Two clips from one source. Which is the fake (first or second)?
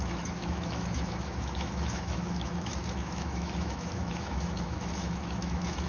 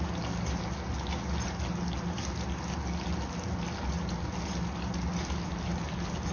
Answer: first